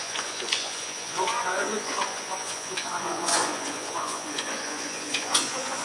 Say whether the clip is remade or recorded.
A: remade